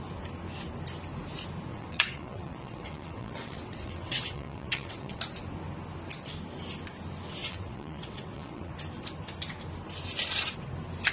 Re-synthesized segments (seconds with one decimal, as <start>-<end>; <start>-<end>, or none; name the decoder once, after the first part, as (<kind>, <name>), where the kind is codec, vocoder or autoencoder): 1.7-5.2 (vocoder, WaveNeXt); 7.4-8.7